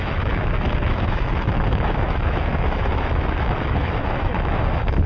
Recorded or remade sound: remade